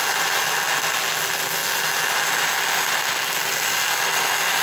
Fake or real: real